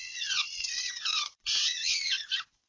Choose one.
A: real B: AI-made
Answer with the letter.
B